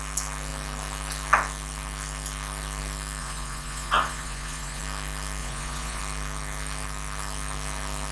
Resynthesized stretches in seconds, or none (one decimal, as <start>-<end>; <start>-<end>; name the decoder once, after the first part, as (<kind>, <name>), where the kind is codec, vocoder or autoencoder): 3.2-4.8 (vocoder, Vocos); 5.4-6.0